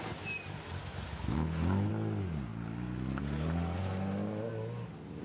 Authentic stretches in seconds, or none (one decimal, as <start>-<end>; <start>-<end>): 0.0-0.8; 1.9-5.2